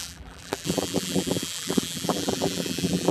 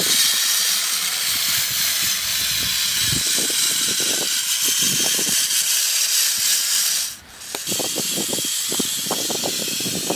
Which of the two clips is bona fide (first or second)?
second